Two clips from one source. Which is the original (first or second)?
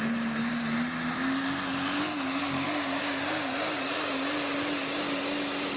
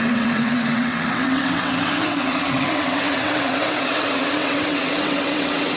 first